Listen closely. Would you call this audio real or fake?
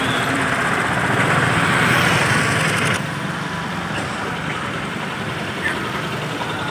fake